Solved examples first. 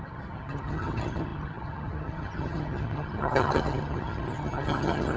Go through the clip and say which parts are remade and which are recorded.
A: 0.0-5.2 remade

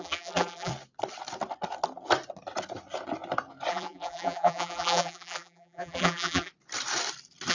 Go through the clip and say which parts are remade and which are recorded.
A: 0.0-0.7 remade; 0.7-3.7 recorded; 3.7-6.5 remade; 6.5-7.5 recorded